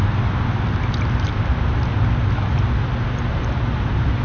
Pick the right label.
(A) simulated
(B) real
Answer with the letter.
B